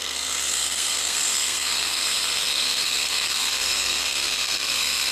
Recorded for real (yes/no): no